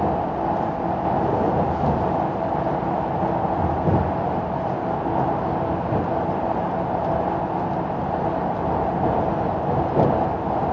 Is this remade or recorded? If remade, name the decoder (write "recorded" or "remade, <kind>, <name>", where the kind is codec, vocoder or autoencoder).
recorded